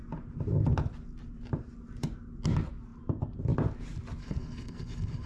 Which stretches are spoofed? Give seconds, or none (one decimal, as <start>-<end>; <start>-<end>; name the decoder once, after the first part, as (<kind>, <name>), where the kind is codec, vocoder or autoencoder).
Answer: 4.2-5.3 (codec, SNAC)